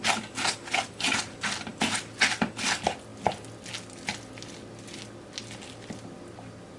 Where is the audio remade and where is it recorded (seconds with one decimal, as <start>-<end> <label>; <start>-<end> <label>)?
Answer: 0.0-6.8 recorded